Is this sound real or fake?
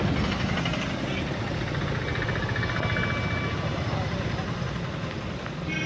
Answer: real